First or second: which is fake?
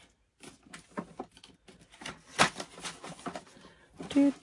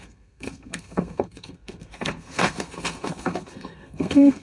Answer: second